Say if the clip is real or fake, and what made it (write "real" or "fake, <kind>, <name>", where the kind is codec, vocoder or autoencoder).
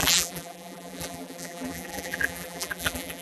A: fake, vocoder, BigVGAN v2